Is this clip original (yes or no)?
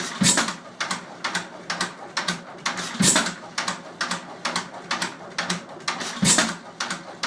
yes